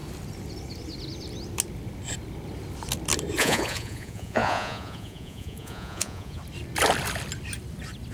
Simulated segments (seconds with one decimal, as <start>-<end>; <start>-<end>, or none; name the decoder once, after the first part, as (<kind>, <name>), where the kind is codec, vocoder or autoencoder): 3.4-6.4 (vocoder, Vocos)